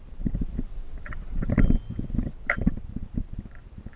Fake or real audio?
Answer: fake